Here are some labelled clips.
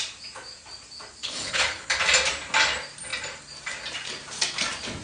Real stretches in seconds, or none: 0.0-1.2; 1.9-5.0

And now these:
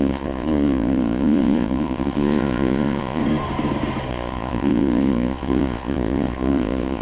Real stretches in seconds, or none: 3.2-4.1